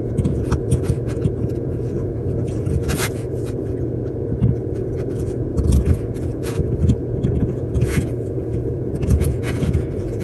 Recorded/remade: remade